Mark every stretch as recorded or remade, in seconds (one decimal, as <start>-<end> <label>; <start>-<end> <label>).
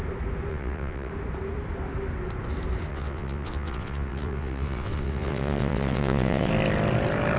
0.0-0.5 recorded; 0.5-1.1 remade; 1.1-2.9 recorded; 2.9-6.5 remade; 6.5-7.4 recorded